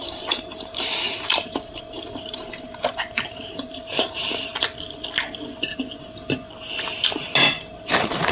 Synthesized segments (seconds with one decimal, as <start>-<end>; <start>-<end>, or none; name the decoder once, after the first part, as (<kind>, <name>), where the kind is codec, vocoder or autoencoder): 0.0-4.5 (vocoder, BigVGAN v2); 7.7-8.3